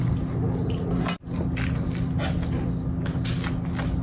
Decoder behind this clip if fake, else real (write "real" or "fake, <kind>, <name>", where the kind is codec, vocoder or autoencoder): real